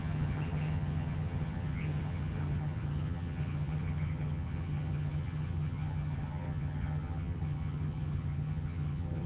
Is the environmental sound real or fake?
fake